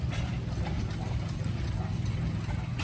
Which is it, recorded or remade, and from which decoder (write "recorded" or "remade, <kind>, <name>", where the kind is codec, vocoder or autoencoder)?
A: recorded